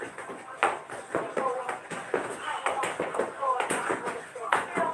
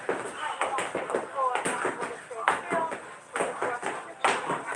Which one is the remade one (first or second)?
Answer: first